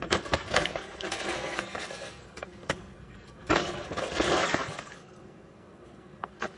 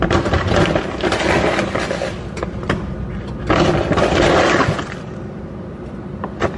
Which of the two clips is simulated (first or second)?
first